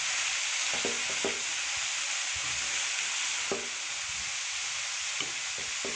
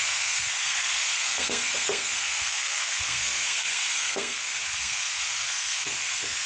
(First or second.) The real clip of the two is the first